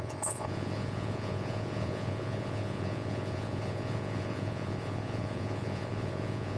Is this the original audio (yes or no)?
no